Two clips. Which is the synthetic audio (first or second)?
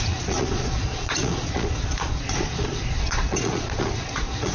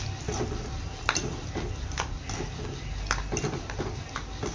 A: first